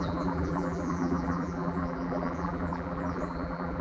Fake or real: fake